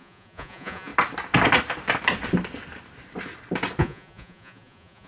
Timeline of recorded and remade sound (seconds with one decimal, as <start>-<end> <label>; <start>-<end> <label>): 0.0-0.9 remade; 0.9-3.8 recorded; 3.8-5.1 remade